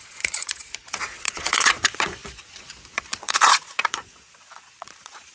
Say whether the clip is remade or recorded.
remade